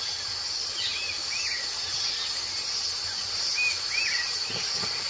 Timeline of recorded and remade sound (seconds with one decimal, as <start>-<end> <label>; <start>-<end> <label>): 0.0-5.1 recorded